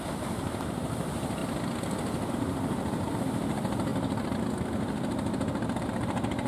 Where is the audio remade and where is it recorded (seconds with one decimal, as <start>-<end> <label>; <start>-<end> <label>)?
0.0-1.4 remade; 1.4-2.3 recorded; 2.3-3.9 remade; 3.9-5.8 recorded; 5.8-6.5 remade